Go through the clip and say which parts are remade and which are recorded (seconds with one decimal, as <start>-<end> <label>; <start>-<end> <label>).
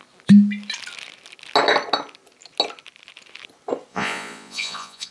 0.0-3.9 recorded; 3.9-5.1 remade